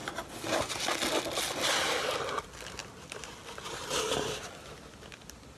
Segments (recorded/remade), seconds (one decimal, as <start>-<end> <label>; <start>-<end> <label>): 0.0-5.6 recorded